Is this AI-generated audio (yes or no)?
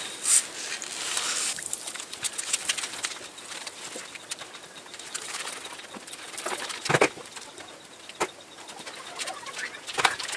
no